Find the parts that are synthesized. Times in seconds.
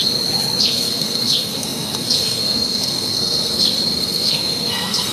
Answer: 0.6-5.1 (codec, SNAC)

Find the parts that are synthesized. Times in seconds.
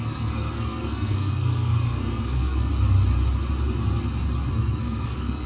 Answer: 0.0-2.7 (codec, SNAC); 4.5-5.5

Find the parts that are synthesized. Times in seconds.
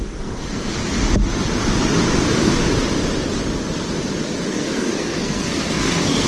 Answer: 0.0-0.8 (codec, SNAC); 4.5-6.3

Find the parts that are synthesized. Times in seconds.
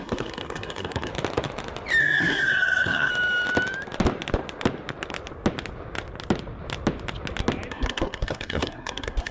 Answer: 0.0-1.1 (codec, SNAC); 2.0-3.1; 7.7-9.3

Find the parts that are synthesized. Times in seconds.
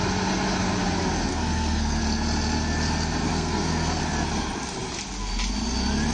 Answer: 1.3-2.0 (codec, SNAC); 3.3-4.0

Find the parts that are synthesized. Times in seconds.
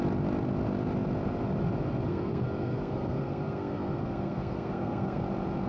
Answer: 2.1-5.2 (codec, SNAC)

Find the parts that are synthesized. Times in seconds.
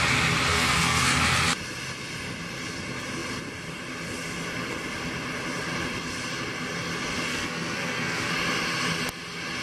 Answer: 0.5-1.2 (codec, SNAC); 7.3-8.3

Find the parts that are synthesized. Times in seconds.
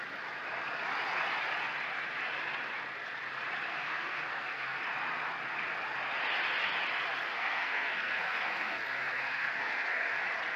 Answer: 3.7-4.8 (codec, SNAC); 7.3-10.2